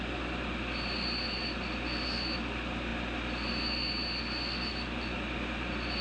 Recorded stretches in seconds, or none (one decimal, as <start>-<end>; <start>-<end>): 0.0-6.0